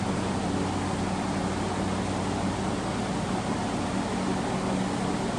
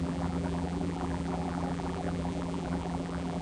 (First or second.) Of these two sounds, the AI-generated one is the second